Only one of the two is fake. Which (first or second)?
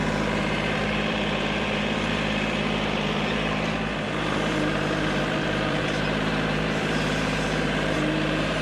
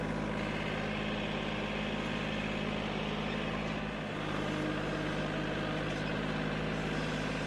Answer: first